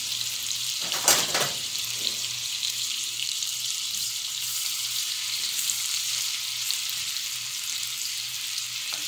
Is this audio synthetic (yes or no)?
yes